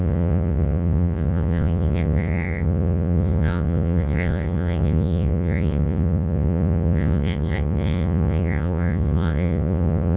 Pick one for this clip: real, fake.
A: fake